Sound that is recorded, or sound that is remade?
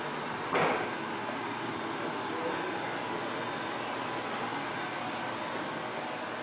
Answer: recorded